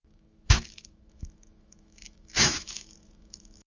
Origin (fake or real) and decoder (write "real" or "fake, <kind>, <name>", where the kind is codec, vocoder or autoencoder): fake, autoencoder, DAC-VAE